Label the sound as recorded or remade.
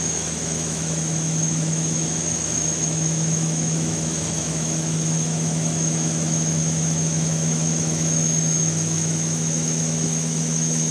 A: remade